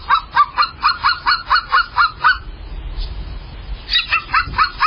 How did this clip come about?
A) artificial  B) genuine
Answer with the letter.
B